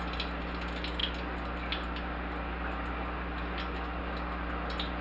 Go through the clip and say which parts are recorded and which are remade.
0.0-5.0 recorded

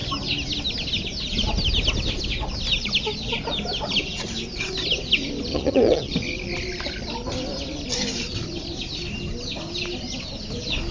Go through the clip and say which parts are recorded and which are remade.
0.0-5.5 recorded; 5.5-6.1 remade; 6.1-10.9 recorded

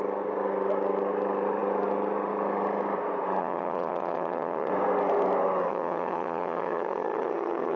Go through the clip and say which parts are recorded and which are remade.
0.0-3.4 recorded; 3.4-4.7 remade; 4.7-5.7 recorded; 5.7-7.8 remade

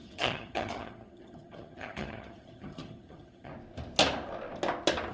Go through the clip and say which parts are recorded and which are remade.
0.0-3.5 remade; 3.5-5.1 recorded

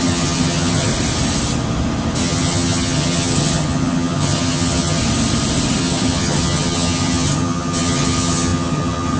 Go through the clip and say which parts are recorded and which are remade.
0.0-0.9 remade; 0.9-2.2 recorded; 2.2-5.0 remade; 5.0-5.8 recorded; 5.8-9.2 remade

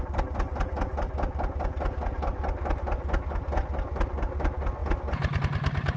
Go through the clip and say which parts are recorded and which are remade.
0.0-6.0 recorded